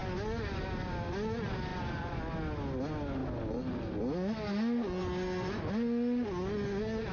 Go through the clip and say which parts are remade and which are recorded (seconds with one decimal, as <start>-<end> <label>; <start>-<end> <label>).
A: 0.0-1.7 recorded; 1.7-2.2 remade; 2.2-7.1 recorded